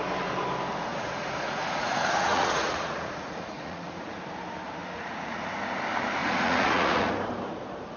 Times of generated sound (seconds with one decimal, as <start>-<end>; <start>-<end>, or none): 0.9-4.2; 4.8-5.4; 6.2-7.1